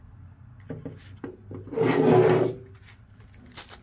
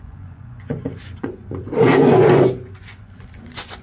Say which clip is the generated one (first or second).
second